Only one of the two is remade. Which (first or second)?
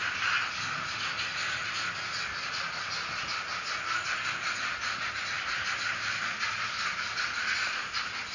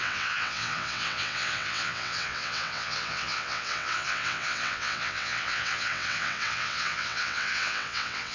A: second